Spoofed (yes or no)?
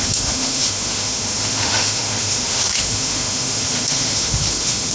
yes